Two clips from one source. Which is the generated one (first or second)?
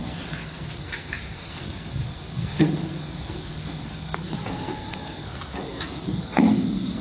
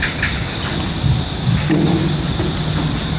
first